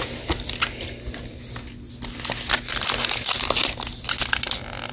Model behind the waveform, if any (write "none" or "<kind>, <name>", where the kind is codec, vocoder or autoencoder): none